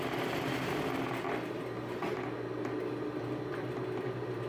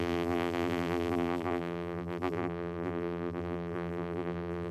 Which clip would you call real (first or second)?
first